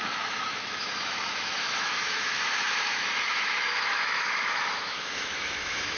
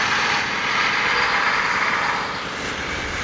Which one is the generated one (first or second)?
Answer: first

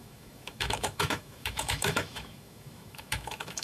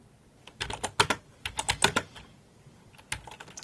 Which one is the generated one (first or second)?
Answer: first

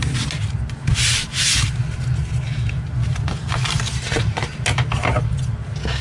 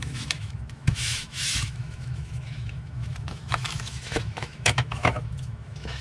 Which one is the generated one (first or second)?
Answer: second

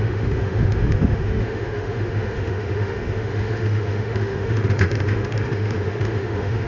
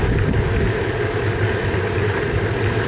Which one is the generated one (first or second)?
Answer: first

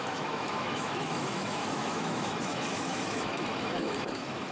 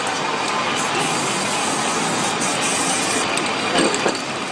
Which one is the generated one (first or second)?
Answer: first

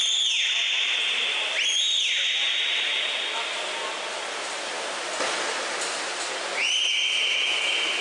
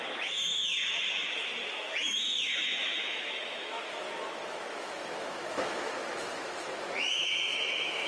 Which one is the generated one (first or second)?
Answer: second